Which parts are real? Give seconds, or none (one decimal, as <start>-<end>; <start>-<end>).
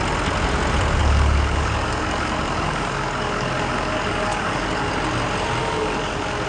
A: 0.0-1.0; 4.9-5.6